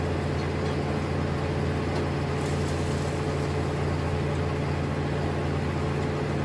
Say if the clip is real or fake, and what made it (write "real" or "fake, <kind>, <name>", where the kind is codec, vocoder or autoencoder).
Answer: real